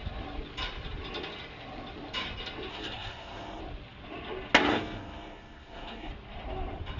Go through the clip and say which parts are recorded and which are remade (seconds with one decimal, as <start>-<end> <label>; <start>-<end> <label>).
0.0-2.7 recorded; 2.7-3.6 remade; 3.6-4.7 recorded; 4.7-6.1 remade; 6.1-7.0 recorded